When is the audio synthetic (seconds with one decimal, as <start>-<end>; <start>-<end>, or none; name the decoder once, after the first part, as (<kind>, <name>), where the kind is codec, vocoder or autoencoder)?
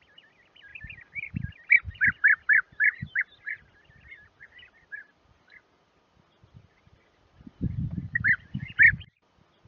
none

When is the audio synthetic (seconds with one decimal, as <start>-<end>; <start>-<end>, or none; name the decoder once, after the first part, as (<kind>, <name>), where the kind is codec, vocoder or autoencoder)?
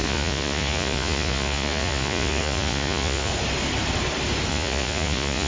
0.0-3.3 (vocoder, Vocos); 4.5-5.5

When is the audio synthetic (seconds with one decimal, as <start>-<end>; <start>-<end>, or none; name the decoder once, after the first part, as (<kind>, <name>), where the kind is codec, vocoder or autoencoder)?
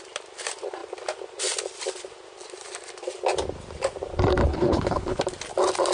4.4-5.2 (codec, HILCodec)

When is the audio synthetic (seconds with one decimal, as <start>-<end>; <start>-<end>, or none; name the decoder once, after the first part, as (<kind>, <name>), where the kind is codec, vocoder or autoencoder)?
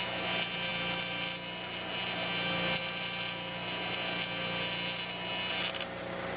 none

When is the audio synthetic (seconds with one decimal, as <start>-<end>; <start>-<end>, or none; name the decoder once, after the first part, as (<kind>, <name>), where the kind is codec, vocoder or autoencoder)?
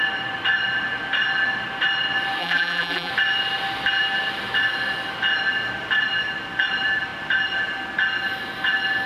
2.4-3.1 (vocoder, BigVGAN v2)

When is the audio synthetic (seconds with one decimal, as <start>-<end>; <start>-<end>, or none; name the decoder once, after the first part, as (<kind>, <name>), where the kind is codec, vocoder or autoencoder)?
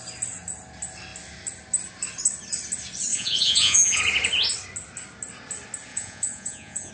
3.1-4.0 (vocoder, Vocos); 5.9-6.9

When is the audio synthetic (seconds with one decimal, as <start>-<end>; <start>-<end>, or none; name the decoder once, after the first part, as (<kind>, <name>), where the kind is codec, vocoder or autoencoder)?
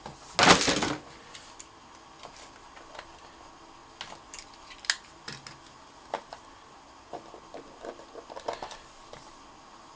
none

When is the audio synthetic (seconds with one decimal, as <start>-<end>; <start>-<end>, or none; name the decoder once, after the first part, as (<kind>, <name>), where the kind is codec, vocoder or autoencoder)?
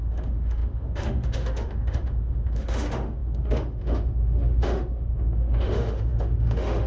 0.0-6.9 (autoencoder, DAC-VAE)